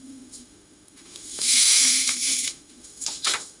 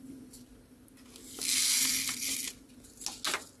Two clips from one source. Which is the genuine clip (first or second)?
second